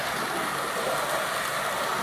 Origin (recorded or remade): recorded